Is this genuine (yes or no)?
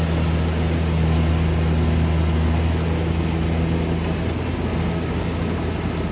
yes